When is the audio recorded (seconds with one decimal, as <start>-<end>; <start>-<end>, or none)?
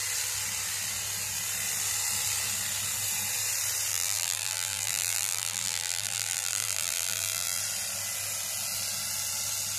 0.0-3.9; 7.6-9.8